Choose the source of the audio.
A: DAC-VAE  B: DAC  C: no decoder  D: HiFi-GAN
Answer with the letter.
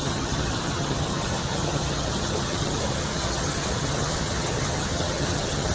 D